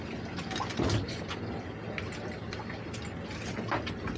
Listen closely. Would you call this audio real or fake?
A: real